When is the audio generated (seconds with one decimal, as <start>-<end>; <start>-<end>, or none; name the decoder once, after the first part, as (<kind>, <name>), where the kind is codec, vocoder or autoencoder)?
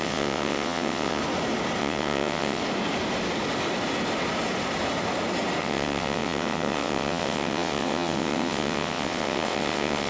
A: 0.0-1.2 (vocoder, WaveNeXt); 1.8-2.6; 5.6-10.1